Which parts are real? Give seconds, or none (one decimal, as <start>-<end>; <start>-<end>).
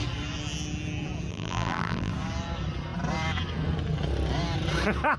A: 0.0-1.3; 2.1-5.2